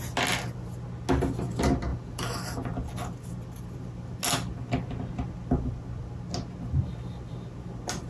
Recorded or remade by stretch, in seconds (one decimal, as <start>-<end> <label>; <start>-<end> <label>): 0.0-8.1 recorded